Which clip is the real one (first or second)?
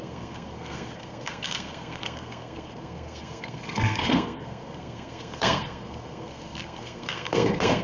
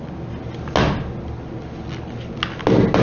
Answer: second